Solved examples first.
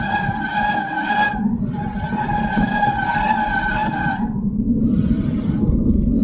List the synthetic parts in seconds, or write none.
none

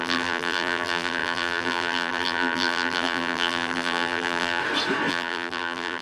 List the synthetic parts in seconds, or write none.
0.0-4.6 (vocoder, BigVGAN v2); 5.1-6.0